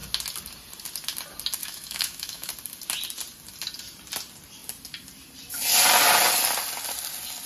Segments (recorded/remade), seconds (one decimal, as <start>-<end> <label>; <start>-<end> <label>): 0.0-1.6 recorded; 1.6-2.5 remade; 2.5-7.5 recorded